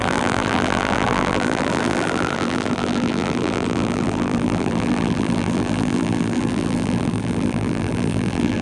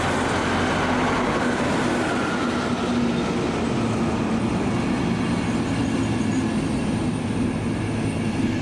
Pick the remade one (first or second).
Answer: first